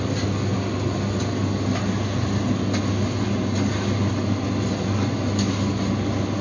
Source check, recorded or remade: recorded